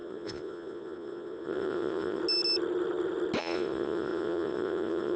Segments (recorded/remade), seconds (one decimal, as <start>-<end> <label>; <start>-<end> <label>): 0.0-2.2 remade; 2.2-3.4 recorded; 3.4-5.2 remade